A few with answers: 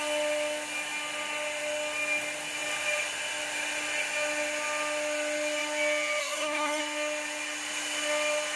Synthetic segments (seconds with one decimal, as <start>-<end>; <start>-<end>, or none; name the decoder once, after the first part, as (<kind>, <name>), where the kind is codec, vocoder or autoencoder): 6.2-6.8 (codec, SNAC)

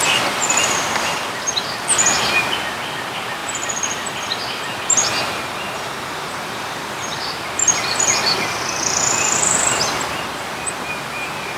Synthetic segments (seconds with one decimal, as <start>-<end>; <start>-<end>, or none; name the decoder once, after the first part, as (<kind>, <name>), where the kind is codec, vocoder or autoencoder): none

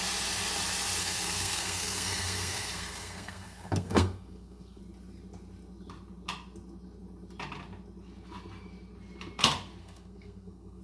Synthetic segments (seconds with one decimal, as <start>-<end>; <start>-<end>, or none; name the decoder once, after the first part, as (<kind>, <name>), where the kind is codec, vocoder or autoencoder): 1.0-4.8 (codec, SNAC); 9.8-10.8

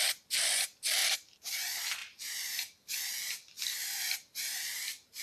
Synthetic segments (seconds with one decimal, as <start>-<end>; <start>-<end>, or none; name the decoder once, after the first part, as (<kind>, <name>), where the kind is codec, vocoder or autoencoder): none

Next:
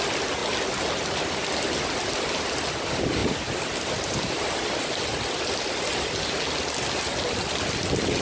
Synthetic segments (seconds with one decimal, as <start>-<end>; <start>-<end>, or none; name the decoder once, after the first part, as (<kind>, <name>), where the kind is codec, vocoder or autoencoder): none

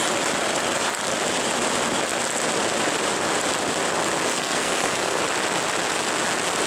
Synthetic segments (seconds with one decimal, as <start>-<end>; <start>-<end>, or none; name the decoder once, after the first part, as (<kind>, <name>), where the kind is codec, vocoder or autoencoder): 4.3-5.2 (codec, SNAC)

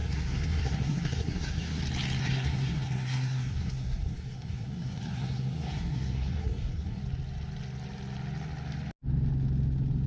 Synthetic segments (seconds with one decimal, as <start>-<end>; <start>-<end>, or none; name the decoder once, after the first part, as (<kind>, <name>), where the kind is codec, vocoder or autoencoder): 0.0-1.8 (codec, SNAC); 2.2-7.0

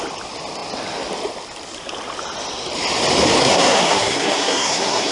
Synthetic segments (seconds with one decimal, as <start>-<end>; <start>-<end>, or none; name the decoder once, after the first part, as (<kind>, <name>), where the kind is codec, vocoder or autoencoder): 3.4-5.1 (codec, SNAC)